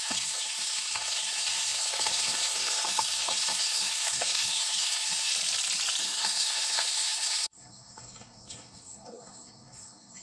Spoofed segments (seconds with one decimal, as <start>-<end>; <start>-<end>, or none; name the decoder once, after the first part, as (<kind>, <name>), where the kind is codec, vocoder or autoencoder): 0.0-5.3 (codec, SNAC); 6.0-10.2